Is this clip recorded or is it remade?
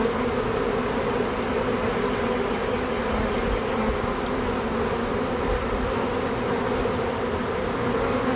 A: recorded